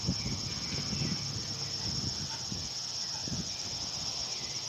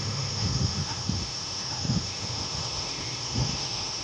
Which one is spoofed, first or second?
second